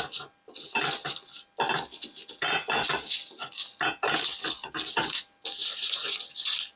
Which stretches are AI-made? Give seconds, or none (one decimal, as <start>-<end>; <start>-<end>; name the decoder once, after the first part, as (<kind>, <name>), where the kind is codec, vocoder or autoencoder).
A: none